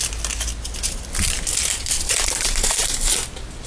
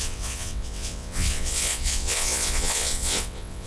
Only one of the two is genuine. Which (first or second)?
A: first